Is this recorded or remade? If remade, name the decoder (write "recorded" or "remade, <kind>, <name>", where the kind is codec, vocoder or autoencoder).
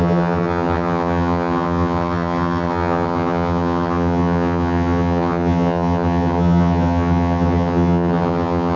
remade, vocoder, HiFi-GAN